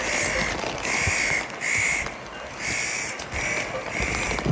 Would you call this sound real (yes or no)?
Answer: yes